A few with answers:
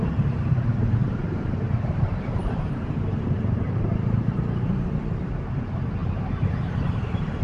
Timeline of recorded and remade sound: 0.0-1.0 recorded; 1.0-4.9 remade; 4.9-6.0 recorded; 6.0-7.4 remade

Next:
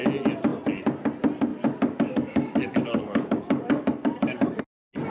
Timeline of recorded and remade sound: 0.0-1.5 recorded; 1.5-4.6 remade; 4.6-5.1 recorded

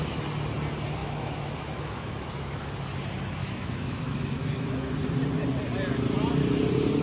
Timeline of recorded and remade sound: 0.0-1.0 recorded; 1.0-2.7 remade; 2.7-3.4 recorded; 3.4-4.9 remade; 4.9-7.0 recorded

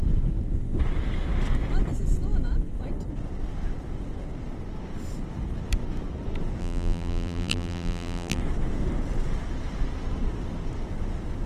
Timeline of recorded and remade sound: 0.0-6.6 recorded; 6.6-8.4 remade; 8.4-11.5 recorded

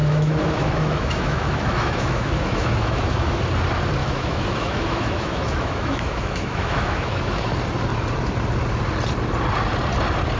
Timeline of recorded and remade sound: 0.0-3.4 remade; 3.4-4.0 recorded; 4.0-7.6 remade; 7.6-10.4 recorded

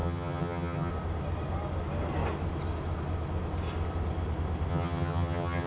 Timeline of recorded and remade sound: 0.0-0.9 remade; 0.9-4.7 recorded; 4.7-5.7 remade